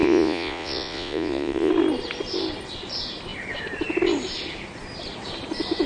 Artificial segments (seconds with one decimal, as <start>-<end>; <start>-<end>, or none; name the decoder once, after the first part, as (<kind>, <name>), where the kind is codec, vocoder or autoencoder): 0.0-1.7 (vocoder, Vocos)